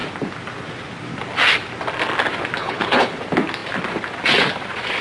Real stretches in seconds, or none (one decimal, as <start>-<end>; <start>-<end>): 0.0-2.6; 3.2-5.0